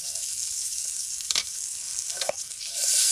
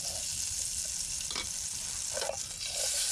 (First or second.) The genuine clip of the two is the second